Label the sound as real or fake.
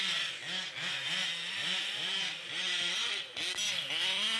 real